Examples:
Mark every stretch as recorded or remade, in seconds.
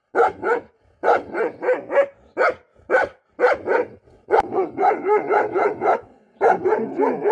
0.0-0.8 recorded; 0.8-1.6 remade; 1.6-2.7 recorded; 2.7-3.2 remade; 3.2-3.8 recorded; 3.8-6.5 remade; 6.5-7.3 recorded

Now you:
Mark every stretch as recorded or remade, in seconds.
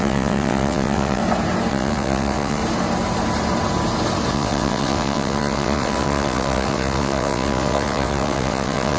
0.0-1.2 remade; 1.2-1.7 recorded; 1.7-2.6 remade; 2.6-4.3 recorded; 4.3-9.0 remade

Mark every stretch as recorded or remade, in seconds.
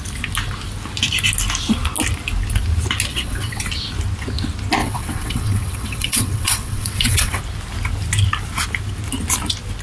0.0-3.1 recorded; 3.1-3.6 remade; 3.6-4.8 recorded; 4.8-7.4 remade; 7.4-9.8 recorded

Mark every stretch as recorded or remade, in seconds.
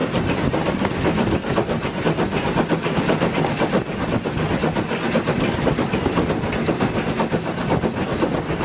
0.0-8.6 recorded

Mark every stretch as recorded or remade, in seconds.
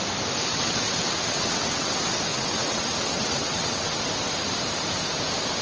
0.0-0.5 recorded; 0.5-1.9 remade; 1.9-2.3 recorded; 2.3-4.0 remade; 4.0-5.6 recorded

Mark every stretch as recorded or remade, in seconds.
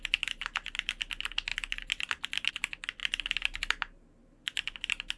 0.0-5.2 recorded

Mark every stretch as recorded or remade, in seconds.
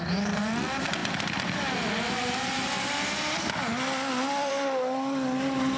0.0-5.8 recorded